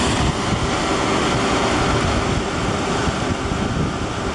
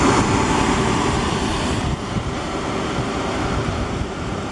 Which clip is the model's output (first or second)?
second